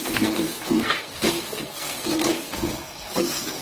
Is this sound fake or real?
fake